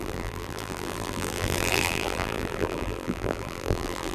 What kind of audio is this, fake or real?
fake